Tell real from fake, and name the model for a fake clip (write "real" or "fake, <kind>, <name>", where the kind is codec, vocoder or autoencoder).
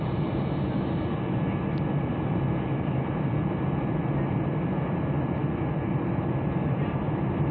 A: real